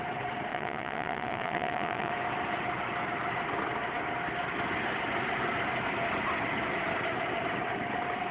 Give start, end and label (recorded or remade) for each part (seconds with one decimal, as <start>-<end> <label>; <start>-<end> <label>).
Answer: 0.0-0.5 recorded; 0.5-2.1 remade; 2.1-8.3 recorded

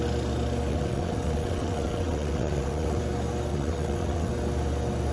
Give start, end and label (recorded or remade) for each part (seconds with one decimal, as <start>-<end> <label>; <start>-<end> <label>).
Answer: 0.0-0.7 recorded; 0.7-3.0 remade; 3.0-3.5 recorded; 3.5-4.3 remade; 4.3-5.1 recorded

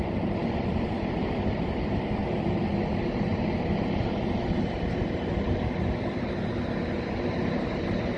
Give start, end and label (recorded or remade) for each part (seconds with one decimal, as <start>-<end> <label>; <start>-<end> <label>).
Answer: 0.0-8.2 recorded

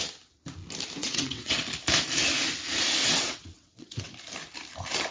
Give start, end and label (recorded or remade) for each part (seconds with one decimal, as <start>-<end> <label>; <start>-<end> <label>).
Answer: 0.0-1.0 recorded; 1.0-1.6 remade; 1.6-3.0 recorded; 3.0-4.1 remade; 4.1-5.1 recorded

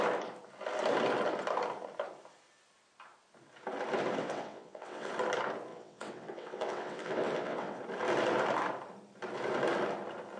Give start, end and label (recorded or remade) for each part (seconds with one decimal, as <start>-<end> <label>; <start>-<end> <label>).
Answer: 0.0-4.2 recorded; 4.2-5.1 remade; 5.1-5.7 recorded; 5.7-7.8 remade; 7.8-10.4 recorded

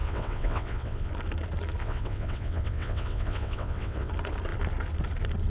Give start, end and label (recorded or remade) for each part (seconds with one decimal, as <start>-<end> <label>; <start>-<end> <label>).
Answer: 0.0-1.1 remade; 1.1-1.8 recorded; 1.8-4.1 remade; 4.1-5.5 recorded

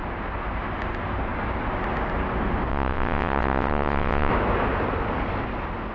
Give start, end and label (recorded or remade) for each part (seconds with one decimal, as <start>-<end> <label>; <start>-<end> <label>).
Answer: 0.0-2.7 recorded; 2.7-4.3 remade; 4.3-5.9 recorded

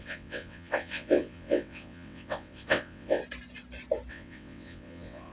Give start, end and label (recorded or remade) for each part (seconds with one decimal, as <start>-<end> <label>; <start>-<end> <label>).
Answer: 0.0-3.2 remade; 3.2-4.1 recorded; 4.1-5.3 remade